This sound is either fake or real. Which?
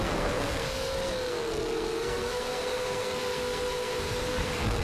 fake